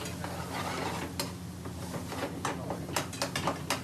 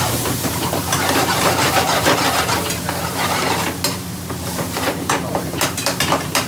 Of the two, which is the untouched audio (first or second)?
first